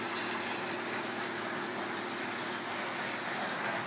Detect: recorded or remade recorded